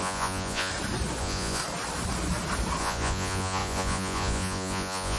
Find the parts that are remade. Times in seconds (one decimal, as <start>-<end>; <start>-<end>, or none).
0.0-0.7; 1.2-1.6; 2.8-5.2